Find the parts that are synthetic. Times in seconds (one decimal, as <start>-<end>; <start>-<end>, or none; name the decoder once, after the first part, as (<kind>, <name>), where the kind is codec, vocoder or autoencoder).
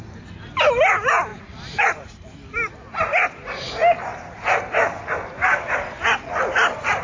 1.3-2.1 (vocoder, BigVGAN v2); 4.1-4.6